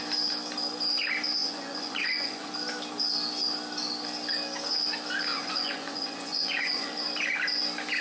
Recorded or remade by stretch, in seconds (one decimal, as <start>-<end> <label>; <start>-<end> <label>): 0.0-1.4 recorded; 1.4-2.5 remade; 2.5-5.3 recorded; 5.3-6.9 remade; 6.9-8.0 recorded